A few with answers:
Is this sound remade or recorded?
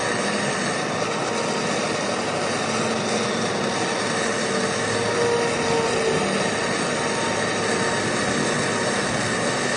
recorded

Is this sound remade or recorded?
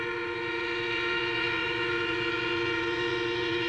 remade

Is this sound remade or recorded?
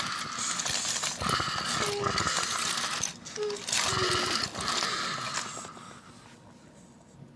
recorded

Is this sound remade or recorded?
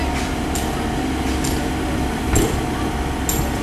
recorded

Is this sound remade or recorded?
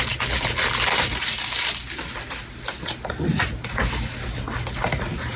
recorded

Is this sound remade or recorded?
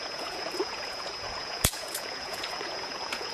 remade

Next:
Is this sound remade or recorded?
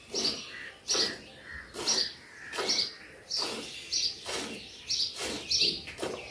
recorded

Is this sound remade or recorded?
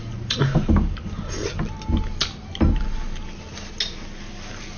recorded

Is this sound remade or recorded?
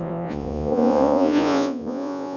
remade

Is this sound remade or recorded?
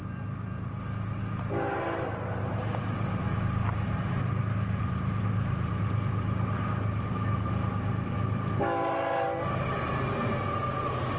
recorded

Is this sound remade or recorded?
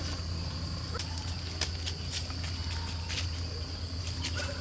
recorded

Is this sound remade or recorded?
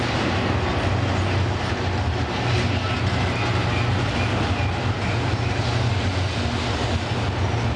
recorded